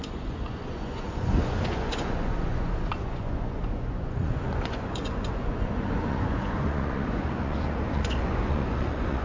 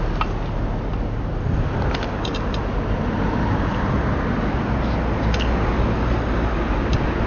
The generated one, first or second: first